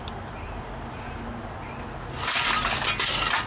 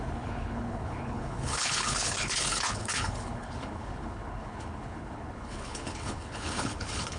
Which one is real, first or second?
first